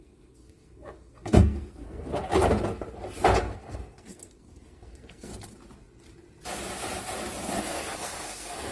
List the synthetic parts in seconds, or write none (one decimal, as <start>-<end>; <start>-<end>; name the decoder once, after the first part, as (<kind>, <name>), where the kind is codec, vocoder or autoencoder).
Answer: 0.0-2.1 (codec, SNAC); 3.4-5.3; 7.6-8.7